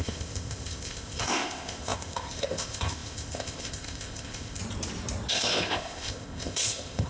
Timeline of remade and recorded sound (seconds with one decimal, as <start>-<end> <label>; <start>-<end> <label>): 0.0-4.6 remade; 4.6-5.3 recorded; 5.3-7.1 remade